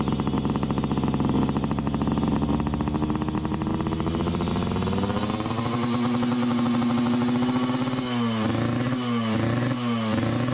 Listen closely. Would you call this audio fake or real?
real